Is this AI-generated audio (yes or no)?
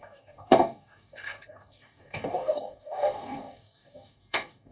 yes